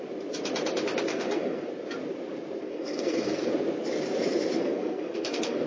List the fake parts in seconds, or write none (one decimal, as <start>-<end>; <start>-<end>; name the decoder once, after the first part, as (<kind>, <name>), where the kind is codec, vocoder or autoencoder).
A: 1.1-1.7 (codec, SNAC); 2.6-3.5; 4.6-5.7